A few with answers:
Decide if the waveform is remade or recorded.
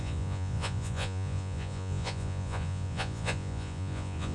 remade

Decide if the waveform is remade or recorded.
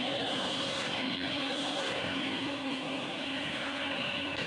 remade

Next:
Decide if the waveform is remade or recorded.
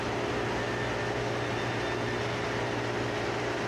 recorded